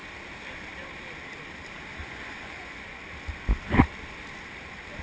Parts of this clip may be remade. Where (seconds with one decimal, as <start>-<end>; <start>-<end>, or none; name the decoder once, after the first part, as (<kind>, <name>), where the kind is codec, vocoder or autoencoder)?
2.0-3.0 (vocoder, Vocos)